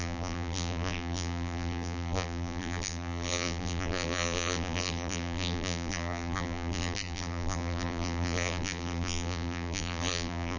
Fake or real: fake